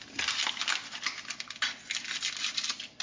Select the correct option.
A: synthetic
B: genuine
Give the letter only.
B